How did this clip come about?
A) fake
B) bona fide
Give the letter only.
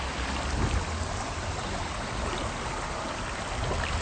B